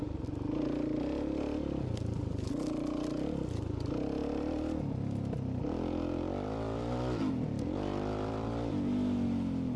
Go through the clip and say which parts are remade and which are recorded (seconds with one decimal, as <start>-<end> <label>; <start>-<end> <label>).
0.0-9.8 recorded